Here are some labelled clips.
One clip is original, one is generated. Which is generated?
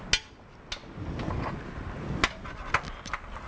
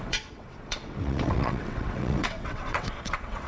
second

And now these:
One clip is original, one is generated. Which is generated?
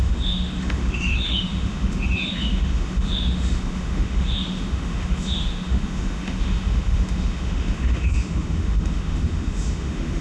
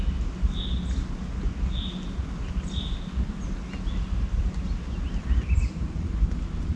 first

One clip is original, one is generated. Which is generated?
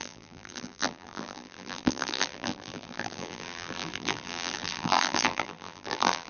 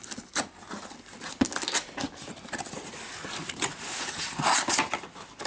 first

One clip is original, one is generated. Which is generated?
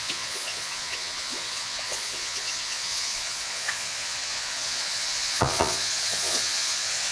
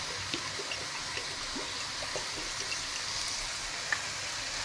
first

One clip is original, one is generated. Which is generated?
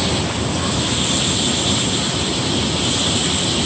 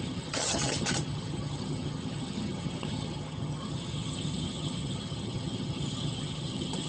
second